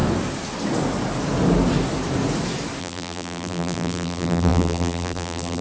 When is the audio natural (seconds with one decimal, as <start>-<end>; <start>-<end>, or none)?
0.0-2.8

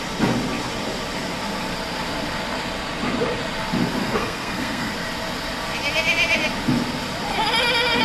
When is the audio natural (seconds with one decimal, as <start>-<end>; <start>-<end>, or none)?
0.0-4.0; 4.9-8.0

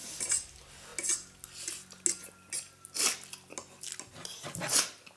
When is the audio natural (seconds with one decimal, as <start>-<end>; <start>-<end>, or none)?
0.0-5.2

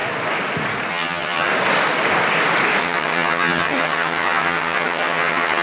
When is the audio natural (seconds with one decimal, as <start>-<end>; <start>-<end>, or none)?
0.0-0.9; 1.5-2.8

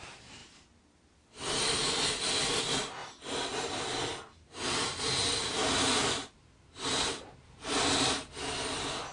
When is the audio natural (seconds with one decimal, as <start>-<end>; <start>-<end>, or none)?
0.0-3.0; 5.0-6.2; 8.1-9.1

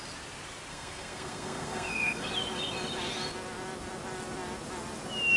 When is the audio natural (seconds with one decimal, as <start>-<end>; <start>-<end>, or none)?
0.0-0.7; 2.3-5.4